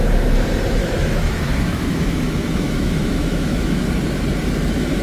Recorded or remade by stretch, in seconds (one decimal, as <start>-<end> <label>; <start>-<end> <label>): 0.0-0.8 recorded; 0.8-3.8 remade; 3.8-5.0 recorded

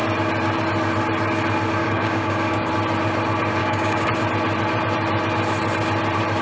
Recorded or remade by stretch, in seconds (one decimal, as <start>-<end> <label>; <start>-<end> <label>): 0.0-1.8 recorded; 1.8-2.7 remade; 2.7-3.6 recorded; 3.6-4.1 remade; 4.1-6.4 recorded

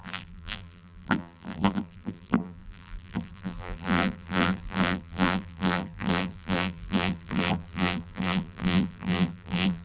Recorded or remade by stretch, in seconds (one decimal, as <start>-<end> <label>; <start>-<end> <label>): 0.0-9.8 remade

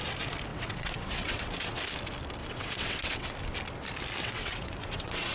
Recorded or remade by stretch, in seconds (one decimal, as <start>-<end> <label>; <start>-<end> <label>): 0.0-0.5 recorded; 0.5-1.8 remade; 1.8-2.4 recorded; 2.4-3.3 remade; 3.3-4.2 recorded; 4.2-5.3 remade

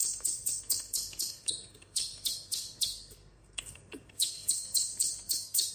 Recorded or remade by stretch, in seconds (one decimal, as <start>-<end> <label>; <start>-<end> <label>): 0.0-5.7 remade

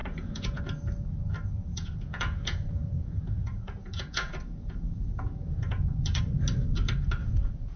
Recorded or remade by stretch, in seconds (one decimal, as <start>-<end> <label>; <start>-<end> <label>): 0.0-0.6 remade; 0.6-1.7 recorded; 1.7-6.2 remade; 6.2-7.2 recorded; 7.2-7.8 remade